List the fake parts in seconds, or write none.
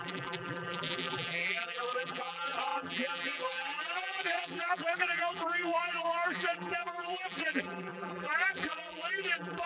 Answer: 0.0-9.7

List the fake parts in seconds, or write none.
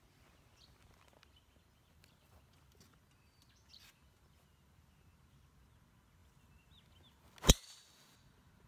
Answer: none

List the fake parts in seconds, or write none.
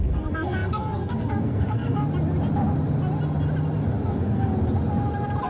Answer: 0.0-2.0; 4.1-4.5